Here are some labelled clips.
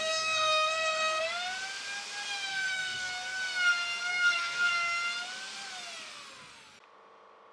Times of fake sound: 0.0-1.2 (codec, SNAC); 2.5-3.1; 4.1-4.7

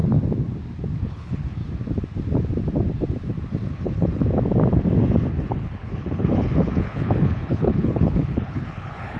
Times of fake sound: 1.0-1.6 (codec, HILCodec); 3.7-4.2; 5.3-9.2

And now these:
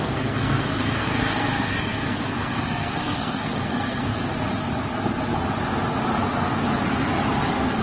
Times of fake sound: 0.0-4.1 (codec, SNAC)

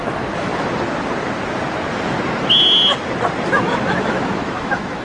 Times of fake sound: 0.0-0.5 (autoencoder, DAC-VAE); 3.5-5.0

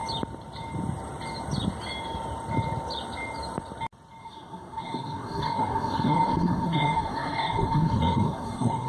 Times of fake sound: 4.2-8.9 (codec, SNAC)